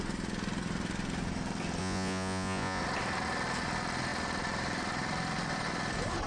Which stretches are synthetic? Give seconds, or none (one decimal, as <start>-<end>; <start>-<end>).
1.8-2.8